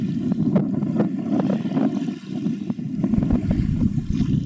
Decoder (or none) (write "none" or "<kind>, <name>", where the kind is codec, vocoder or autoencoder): none